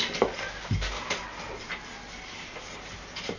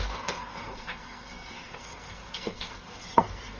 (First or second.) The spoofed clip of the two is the second